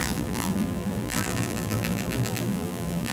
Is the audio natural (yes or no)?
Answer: no